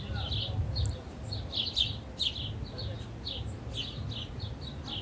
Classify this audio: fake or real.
real